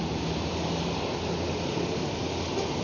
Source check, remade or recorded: recorded